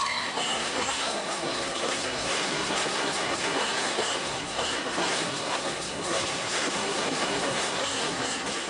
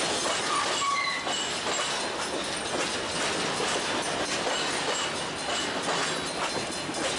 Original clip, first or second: second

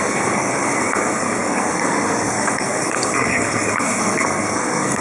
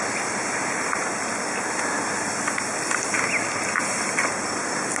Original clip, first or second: second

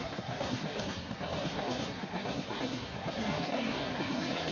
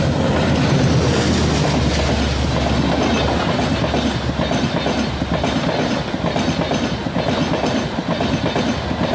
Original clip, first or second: second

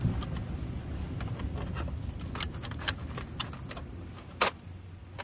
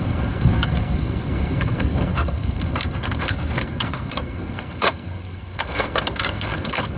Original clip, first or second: first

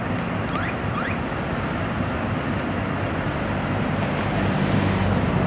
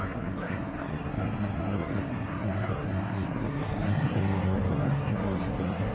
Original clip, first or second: first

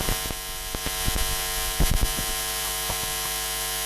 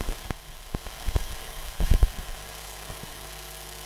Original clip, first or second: first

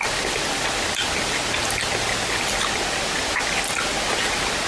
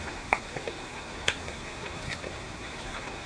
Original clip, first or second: first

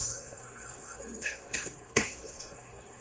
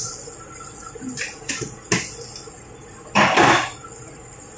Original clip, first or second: second